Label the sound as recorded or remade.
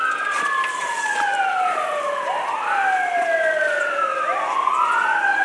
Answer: recorded